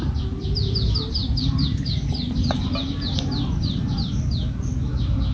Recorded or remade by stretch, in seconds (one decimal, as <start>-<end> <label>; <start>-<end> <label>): 0.0-5.3 recorded